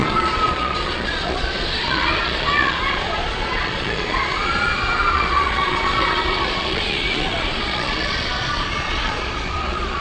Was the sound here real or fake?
fake